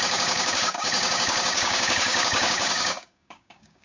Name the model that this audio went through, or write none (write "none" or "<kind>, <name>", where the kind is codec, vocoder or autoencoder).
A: codec, DAC